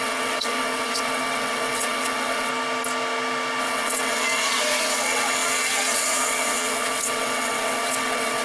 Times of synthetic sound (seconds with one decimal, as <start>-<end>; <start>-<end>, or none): 0.0-2.5; 3.6-8.4